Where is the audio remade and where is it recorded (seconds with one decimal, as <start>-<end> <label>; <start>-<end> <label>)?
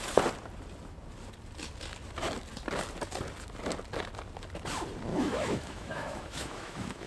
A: 0.0-5.1 recorded; 5.1-7.1 remade